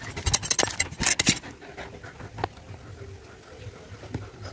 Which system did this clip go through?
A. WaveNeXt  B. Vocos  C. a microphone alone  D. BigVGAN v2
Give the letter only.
C